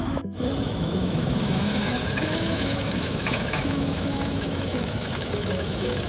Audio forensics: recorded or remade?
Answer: remade